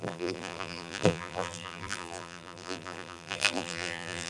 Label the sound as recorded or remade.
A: remade